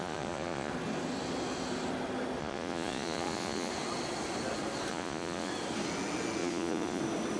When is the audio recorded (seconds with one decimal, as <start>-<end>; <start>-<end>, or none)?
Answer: 0.7-2.4; 3.7-4.9; 5.5-6.4; 7.0-7.4